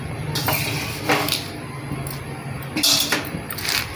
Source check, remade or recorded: recorded